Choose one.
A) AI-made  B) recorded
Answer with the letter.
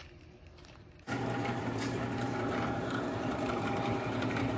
A